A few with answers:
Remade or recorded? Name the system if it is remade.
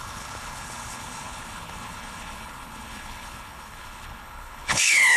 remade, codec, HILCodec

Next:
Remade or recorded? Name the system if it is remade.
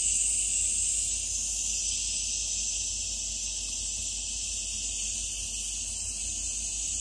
recorded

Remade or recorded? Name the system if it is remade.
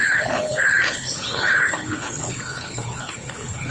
remade, codec, HILCodec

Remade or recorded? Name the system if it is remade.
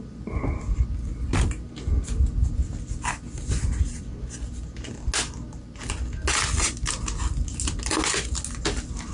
recorded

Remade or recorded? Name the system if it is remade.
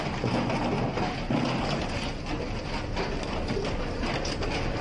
recorded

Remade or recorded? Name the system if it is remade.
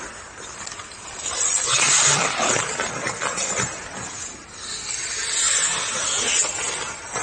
recorded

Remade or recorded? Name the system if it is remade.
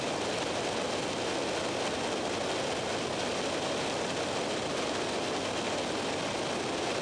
recorded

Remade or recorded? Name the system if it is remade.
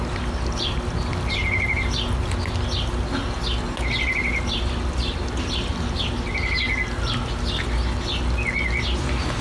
recorded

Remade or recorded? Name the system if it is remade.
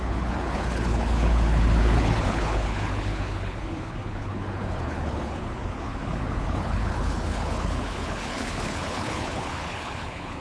remade, codec, HILCodec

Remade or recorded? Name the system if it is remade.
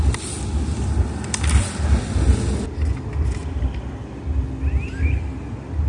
recorded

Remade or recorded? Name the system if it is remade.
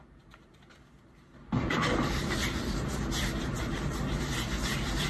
recorded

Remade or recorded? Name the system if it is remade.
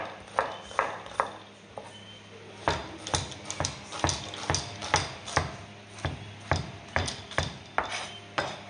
recorded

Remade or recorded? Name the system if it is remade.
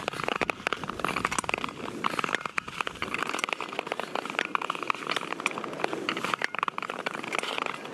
recorded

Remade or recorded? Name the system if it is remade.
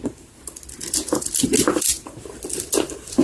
recorded